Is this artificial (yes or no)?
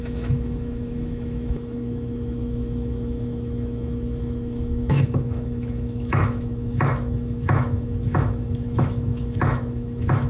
yes